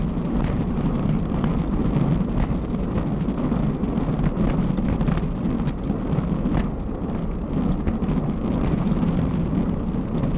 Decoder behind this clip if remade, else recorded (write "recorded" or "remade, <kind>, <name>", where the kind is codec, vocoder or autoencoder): recorded